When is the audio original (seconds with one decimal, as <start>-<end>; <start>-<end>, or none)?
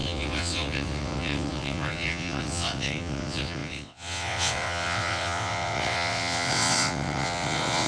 none